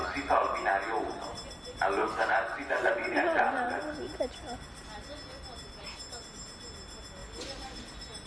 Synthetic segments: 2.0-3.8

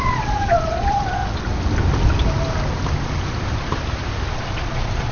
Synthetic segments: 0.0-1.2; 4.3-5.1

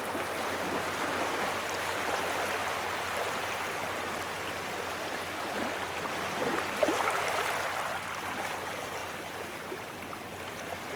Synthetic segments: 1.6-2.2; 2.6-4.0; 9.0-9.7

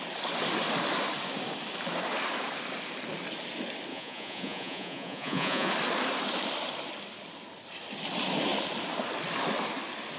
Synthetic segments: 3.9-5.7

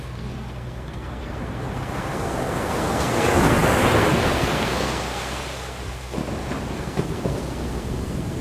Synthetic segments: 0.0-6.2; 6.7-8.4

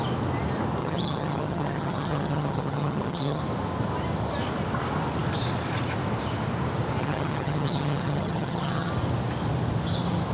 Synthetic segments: 0.8-3.4; 7.0-8.9